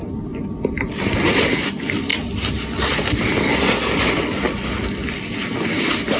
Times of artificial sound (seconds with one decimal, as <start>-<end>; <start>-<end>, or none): none